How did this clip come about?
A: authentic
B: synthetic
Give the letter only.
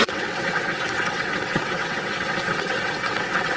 B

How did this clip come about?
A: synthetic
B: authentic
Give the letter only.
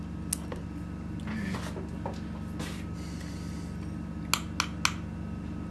B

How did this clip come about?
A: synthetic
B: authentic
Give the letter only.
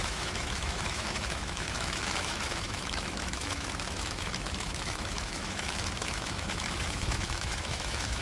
A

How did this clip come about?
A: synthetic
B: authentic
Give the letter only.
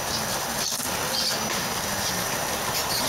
A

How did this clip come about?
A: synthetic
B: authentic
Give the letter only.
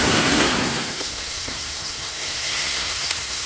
A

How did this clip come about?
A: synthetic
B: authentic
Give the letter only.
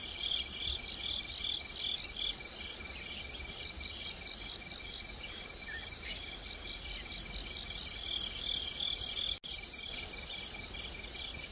B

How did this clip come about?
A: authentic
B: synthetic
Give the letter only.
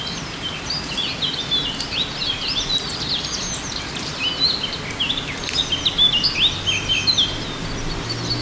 A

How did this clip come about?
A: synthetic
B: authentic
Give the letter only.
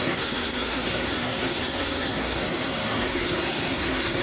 A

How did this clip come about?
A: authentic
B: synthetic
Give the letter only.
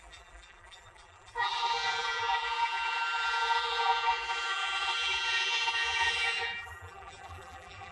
B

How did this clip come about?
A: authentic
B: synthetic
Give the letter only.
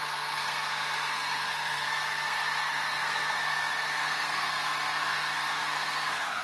B